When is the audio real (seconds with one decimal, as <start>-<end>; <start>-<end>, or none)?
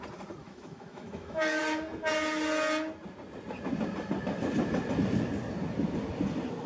0.0-0.4; 1.6-6.7